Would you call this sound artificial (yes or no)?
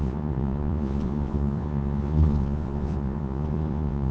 yes